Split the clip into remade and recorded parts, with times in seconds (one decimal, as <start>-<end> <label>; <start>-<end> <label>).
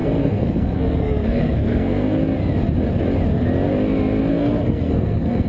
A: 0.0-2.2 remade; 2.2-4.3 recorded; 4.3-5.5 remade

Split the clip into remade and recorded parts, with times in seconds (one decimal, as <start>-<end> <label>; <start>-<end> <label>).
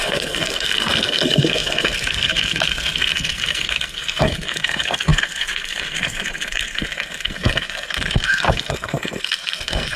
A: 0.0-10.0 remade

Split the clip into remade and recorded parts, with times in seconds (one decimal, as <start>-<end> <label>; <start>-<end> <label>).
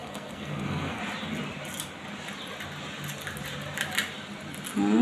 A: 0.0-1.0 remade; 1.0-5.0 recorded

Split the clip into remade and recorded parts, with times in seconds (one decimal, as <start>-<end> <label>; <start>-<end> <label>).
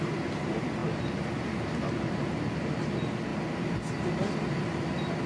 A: 0.0-5.3 recorded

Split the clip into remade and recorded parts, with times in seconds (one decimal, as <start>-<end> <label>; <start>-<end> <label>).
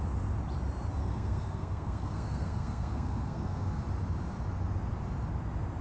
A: 0.0-1.0 recorded; 1.0-3.8 remade; 3.8-5.8 recorded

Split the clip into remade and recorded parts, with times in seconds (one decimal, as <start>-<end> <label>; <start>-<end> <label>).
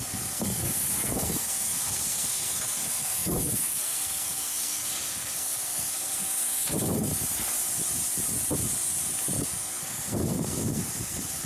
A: 0.0-7.1 remade; 7.1-9.4 recorded; 9.4-11.5 remade